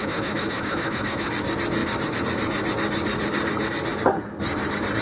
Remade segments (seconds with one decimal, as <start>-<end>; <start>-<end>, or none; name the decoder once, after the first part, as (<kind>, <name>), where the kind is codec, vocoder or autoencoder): 0.0-1.3 (autoencoder, DAC-VAE)

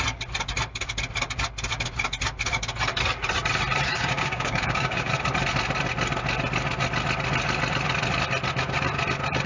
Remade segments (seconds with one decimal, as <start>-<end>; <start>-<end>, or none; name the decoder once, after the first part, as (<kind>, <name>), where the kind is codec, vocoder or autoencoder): 3.9-5.1 (codec, DAC)